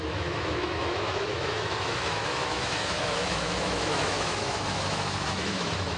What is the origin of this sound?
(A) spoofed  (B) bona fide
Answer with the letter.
A